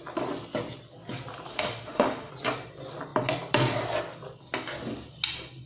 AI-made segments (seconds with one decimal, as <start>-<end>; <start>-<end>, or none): 1.5-2.3